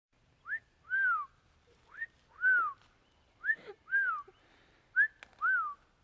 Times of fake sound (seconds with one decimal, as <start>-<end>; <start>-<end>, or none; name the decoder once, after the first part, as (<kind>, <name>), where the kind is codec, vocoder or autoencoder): 0.0-1.8 (vocoder, BigVGAN v2); 3.0-4.1